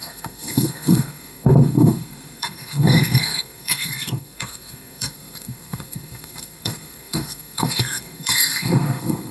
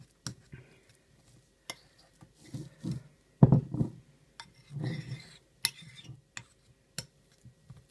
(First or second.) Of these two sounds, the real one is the second